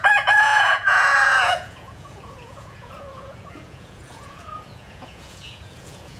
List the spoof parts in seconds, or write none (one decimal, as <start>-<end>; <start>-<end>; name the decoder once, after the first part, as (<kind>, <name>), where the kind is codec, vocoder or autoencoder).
0.0-6.2 (vocoder, Vocos)